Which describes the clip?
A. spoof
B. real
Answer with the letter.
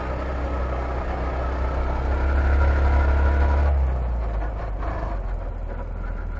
B